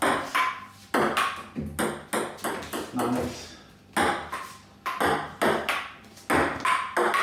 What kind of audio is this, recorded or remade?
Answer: recorded